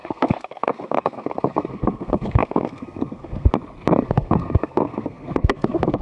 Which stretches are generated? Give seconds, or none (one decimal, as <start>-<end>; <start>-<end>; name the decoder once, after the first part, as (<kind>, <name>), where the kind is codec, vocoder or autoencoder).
0.0-3.5 (codec, SNAC); 4.0-6.0